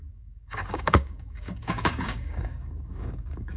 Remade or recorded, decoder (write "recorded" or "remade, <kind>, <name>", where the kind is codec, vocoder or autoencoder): remade, codec, DAC